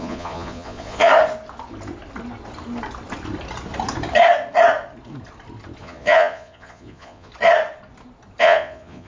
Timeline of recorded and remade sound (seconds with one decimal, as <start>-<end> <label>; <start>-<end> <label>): 0.0-1.1 remade; 1.1-5.8 recorded; 5.8-7.3 remade; 7.3-8.4 recorded; 8.4-9.1 remade